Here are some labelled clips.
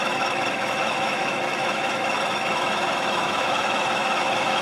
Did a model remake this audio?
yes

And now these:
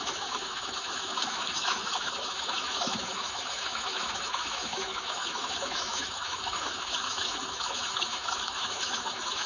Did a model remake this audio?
yes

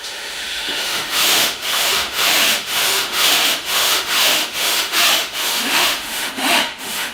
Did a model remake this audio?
yes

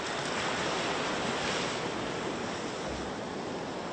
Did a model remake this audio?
no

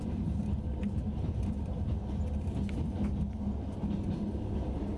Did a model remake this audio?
no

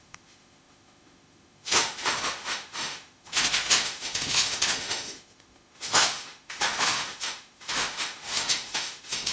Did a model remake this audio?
yes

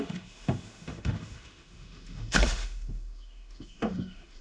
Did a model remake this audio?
yes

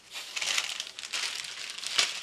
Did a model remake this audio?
no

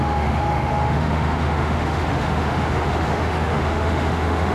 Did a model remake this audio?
yes